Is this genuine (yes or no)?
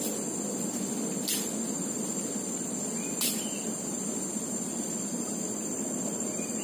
no